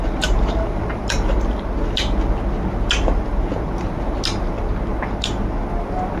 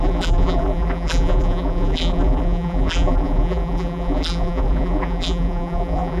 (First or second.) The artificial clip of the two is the second